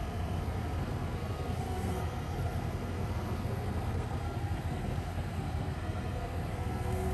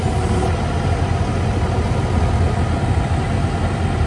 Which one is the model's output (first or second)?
first